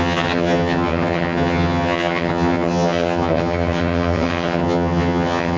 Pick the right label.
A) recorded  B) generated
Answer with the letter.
B